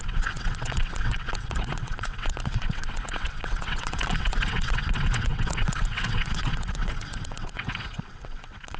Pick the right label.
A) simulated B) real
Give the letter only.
A